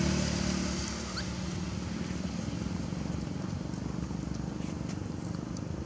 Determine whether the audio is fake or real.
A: real